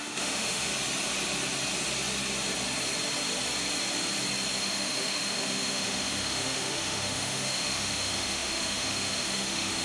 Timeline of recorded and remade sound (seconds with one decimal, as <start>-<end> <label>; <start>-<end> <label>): 0.0-0.7 remade; 0.7-4.6 recorded; 4.6-9.8 remade